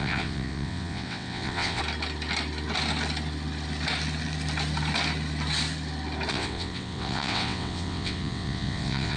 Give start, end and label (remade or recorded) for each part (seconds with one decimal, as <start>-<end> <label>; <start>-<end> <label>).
0.0-1.8 remade; 1.8-6.3 recorded; 6.3-9.2 remade